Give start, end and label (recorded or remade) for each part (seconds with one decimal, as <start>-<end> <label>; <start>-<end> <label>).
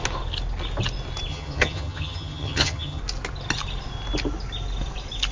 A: 0.0-1.3 recorded; 1.3-3.0 remade; 3.0-5.3 recorded